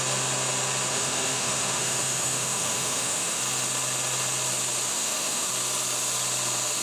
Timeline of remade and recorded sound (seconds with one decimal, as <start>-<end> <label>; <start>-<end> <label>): 0.0-0.9 recorded; 0.9-3.4 remade; 3.4-4.9 recorded; 4.9-5.5 remade; 5.5-6.8 recorded